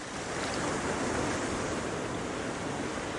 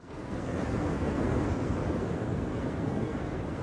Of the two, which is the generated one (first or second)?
second